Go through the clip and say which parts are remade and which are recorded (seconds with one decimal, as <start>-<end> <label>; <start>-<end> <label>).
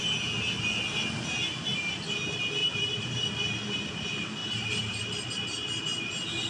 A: 0.0-2.6 recorded; 2.6-3.3 remade; 3.3-4.4 recorded; 4.4-5.3 remade; 5.3-6.5 recorded